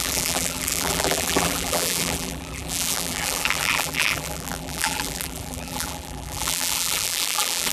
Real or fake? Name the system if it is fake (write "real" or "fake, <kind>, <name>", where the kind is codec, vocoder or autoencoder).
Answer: fake, vocoder, BigVGAN v2